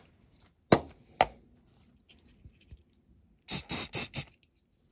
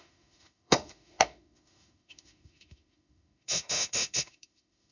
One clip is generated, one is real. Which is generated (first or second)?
second